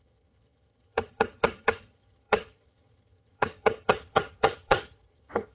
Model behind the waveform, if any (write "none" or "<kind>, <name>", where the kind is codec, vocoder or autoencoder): vocoder, HiFi-GAN